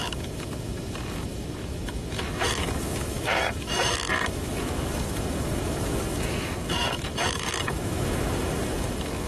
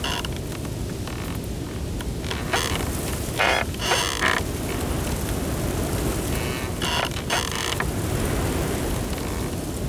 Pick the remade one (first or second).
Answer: first